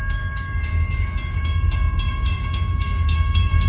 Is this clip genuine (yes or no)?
no